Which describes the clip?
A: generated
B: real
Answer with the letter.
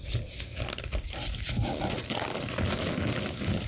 B